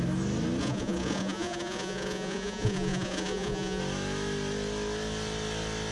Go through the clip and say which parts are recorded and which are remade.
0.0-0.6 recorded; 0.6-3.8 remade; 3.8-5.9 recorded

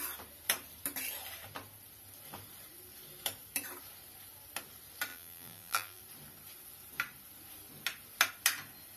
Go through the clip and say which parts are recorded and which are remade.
0.0-5.1 recorded; 5.1-6.0 remade; 6.0-9.0 recorded

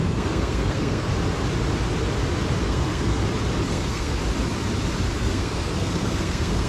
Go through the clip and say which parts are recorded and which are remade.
0.0-1.1 remade; 1.1-2.6 recorded; 2.6-3.2 remade; 3.2-3.7 recorded; 3.7-4.2 remade; 4.2-5.2 recorded; 5.2-6.7 remade

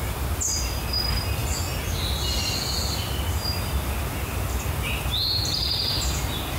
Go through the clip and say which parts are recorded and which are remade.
0.0-6.6 recorded

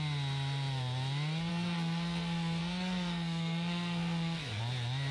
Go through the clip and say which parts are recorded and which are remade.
0.0-1.5 recorded; 1.5-4.6 remade; 4.6-5.1 recorded

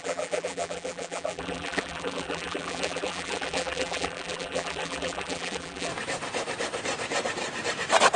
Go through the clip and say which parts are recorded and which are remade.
0.0-5.9 remade; 5.9-8.2 recorded

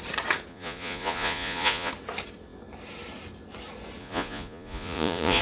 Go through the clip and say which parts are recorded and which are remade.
0.0-0.5 recorded; 0.5-1.9 remade; 1.9-4.0 recorded; 4.0-5.4 remade

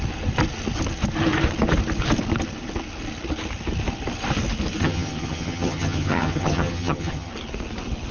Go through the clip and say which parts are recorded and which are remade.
0.0-4.8 recorded; 4.8-7.3 remade; 7.3-8.1 recorded